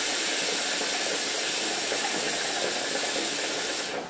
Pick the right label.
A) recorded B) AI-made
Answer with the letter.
A